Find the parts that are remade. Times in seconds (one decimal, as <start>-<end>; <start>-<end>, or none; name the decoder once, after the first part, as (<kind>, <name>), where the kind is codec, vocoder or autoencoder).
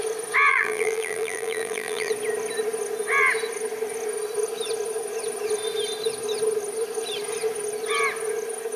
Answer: 0.5-2.1 (vocoder, BigVGAN v2)